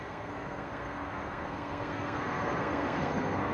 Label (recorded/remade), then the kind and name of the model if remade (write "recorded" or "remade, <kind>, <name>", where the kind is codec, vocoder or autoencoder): remade, codec, SNAC